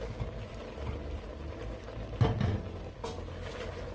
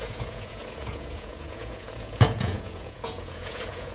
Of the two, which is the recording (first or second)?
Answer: first